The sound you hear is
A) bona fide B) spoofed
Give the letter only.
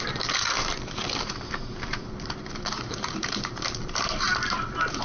B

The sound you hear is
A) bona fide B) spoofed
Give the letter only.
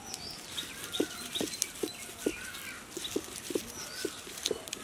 A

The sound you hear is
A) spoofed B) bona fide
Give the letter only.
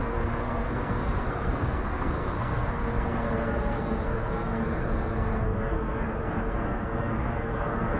A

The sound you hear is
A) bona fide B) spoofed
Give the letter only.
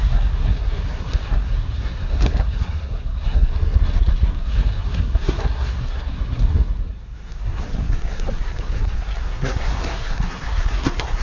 B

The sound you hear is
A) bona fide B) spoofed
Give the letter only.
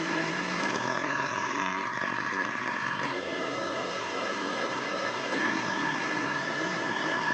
B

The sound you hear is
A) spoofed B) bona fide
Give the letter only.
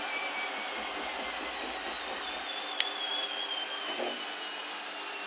B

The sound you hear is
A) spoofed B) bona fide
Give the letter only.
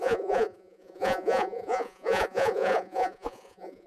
A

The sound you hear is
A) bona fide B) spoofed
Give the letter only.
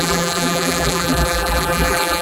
B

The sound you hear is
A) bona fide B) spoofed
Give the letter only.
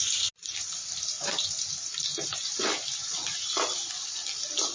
A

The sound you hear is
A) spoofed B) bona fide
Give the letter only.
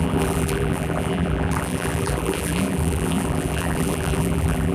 A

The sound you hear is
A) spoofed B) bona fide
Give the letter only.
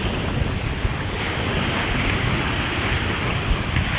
B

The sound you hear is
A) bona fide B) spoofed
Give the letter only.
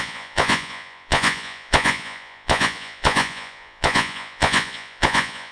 B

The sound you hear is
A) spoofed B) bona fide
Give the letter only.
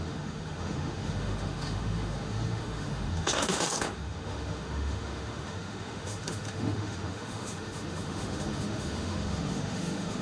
A